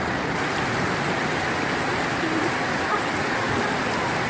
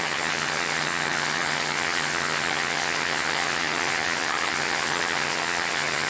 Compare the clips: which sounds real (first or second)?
first